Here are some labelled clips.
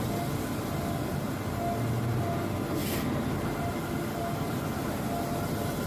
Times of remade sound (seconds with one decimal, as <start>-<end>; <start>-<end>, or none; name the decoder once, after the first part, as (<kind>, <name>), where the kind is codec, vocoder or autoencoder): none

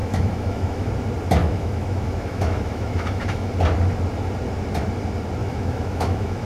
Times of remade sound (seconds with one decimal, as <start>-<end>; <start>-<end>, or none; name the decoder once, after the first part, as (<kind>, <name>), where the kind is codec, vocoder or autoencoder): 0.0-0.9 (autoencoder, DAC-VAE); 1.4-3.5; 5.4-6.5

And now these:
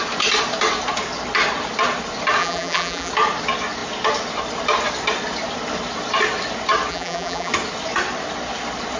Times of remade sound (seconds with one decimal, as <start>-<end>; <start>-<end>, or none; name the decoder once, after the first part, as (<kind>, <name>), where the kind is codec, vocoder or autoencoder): 2.4-3.1 (vocoder, BigVGAN v2); 6.9-7.5

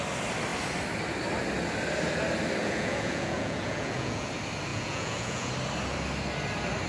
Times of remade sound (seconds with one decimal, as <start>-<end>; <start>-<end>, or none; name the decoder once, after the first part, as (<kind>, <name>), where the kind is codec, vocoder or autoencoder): 2.6-4.3 (vocoder, Vocos); 4.7-5.5